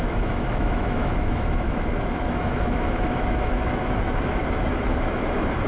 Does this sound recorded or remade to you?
remade